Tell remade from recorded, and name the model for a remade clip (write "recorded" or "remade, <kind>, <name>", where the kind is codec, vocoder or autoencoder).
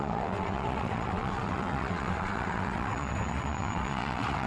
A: remade, vocoder, WaveNeXt